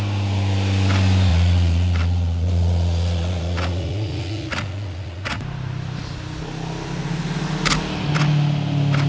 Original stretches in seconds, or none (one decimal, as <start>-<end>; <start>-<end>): 0.0-1.3; 5.4-9.1